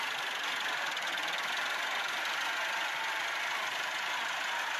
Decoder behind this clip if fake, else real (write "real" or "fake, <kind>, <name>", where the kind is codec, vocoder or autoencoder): real